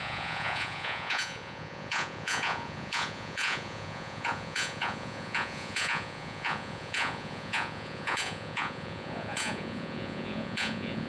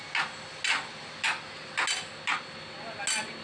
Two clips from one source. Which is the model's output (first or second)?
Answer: first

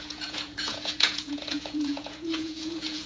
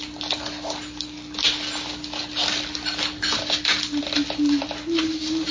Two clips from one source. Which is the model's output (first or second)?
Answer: first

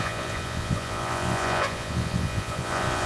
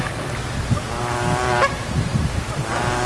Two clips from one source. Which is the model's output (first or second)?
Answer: first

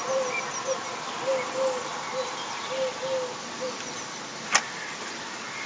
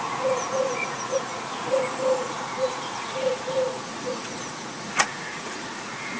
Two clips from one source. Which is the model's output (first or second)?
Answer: second